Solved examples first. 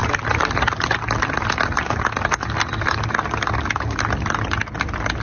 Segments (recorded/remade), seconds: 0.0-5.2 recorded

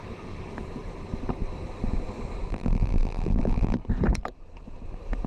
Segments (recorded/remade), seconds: 0.0-2.5 recorded; 2.5-3.8 remade; 3.8-5.3 recorded

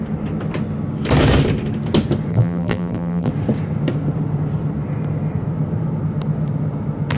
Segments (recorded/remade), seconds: 0.0-2.3 recorded; 2.3-3.3 remade; 3.3-7.2 recorded

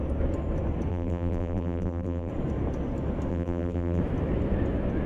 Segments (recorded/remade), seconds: 0.0-0.9 recorded; 0.9-2.3 remade; 2.3-3.3 recorded; 3.3-4.0 remade; 4.0-5.1 recorded

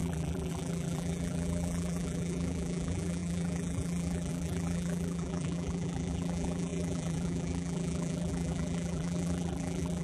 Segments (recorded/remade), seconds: 0.0-10.0 remade

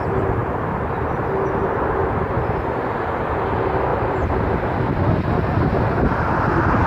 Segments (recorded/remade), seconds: 0.0-3.9 recorded; 3.9-4.9 remade; 4.9-6.9 recorded